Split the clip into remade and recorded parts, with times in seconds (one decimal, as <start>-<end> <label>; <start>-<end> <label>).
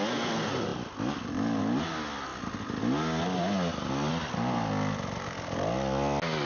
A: 0.0-6.5 recorded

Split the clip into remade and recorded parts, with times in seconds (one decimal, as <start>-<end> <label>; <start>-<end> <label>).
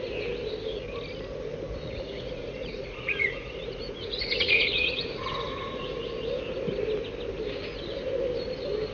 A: 0.0-1.8 recorded; 1.8-6.2 remade; 6.2-8.9 recorded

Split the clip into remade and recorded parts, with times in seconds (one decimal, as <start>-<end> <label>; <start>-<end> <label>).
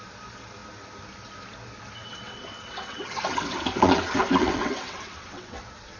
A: 0.0-2.0 recorded; 2.0-5.6 remade; 5.6-6.0 recorded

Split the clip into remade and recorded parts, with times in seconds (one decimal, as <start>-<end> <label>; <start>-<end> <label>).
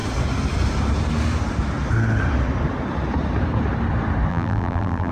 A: 0.0-4.3 recorded; 4.3-5.1 remade